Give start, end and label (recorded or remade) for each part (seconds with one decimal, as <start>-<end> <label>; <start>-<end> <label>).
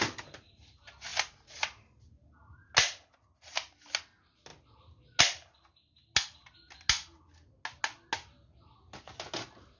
0.0-9.8 recorded